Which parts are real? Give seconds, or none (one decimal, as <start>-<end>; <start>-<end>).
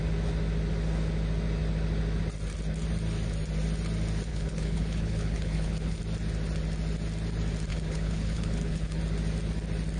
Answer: 0.0-4.3; 6.0-7.7; 9.0-10.0